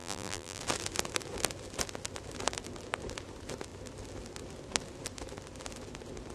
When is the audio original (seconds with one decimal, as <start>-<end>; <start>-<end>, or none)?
0.6-6.3